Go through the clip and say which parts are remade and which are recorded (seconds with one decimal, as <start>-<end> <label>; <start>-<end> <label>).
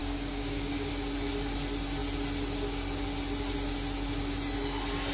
0.0-0.9 remade; 0.9-5.1 recorded